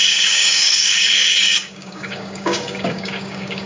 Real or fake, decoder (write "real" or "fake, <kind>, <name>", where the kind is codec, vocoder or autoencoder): fake, codec, DAC